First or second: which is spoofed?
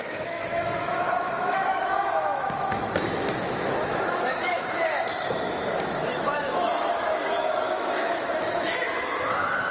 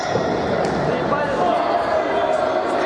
first